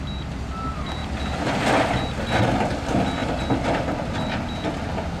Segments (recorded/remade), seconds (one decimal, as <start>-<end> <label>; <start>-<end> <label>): 0.0-1.0 recorded; 1.0-1.6 remade; 1.6-5.2 recorded